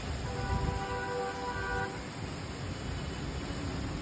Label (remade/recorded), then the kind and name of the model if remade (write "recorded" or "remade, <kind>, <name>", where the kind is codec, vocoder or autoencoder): recorded